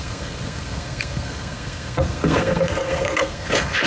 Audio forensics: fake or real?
fake